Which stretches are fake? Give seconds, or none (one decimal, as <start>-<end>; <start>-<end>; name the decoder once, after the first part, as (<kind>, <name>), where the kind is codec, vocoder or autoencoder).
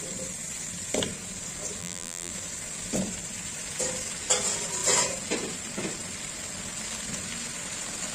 1.8-2.3 (vocoder, BigVGAN v2)